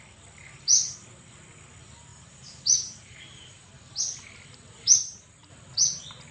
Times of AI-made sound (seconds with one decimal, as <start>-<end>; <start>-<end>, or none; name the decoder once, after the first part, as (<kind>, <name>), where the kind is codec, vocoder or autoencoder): 2.1-3.7 (vocoder, BigVGAN v2); 5.0-5.5